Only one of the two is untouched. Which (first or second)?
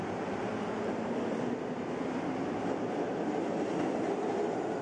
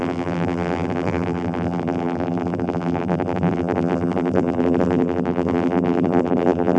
first